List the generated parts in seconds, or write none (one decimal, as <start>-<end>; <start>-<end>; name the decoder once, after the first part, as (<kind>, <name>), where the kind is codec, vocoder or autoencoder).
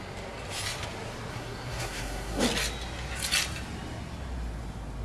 1.3-2.4 (codec, SNAC)